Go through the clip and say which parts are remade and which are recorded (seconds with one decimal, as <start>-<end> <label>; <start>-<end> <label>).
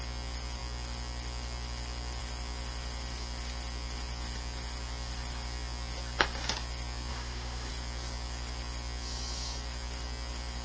0.0-7.1 recorded; 7.1-7.7 remade; 7.7-10.6 recorded